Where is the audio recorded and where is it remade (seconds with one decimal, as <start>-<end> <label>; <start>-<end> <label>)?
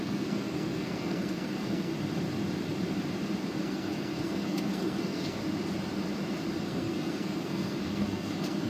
0.0-1.9 remade; 1.9-3.6 recorded; 3.6-5.4 remade; 5.4-6.6 recorded; 6.6-8.7 remade